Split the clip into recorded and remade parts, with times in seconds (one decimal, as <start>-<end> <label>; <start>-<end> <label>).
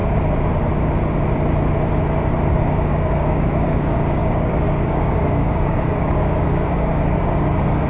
0.0-2.5 recorded; 2.5-7.9 remade